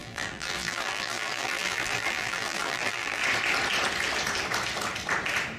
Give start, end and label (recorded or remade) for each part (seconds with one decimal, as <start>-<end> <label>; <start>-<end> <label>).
0.0-3.2 remade; 3.2-5.6 recorded